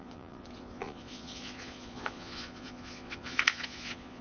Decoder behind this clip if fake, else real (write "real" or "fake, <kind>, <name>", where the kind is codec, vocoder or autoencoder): fake, vocoder, Vocos